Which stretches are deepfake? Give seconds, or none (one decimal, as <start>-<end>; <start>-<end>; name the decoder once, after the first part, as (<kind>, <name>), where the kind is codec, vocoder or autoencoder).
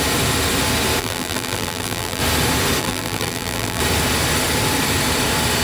1.0-2.2 (vocoder, BigVGAN v2); 2.8-3.8